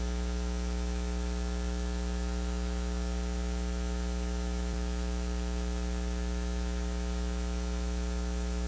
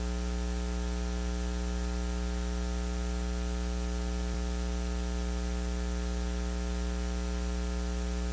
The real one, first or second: second